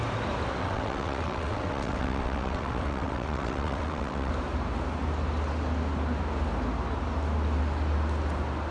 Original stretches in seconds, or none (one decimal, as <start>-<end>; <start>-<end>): 0.0-0.6; 4.3-8.7